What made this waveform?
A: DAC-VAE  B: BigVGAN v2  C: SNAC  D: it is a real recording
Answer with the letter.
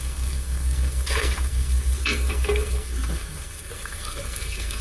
C